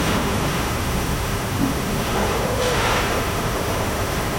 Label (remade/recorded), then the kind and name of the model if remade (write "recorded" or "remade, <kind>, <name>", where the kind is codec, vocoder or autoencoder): remade, autoencoder, DAC-VAE